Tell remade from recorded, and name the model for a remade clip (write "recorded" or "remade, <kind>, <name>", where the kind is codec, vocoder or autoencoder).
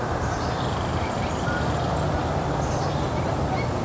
recorded